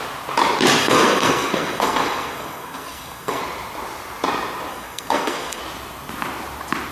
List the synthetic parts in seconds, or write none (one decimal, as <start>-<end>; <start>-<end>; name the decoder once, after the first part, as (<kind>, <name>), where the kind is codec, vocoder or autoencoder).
0.8-3.4 (codec, SNAC); 4.7-5.6